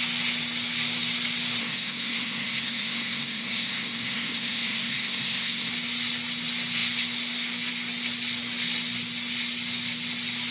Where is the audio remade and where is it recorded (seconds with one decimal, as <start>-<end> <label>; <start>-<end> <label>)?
0.0-1.6 recorded; 1.6-5.7 remade; 5.7-10.5 recorded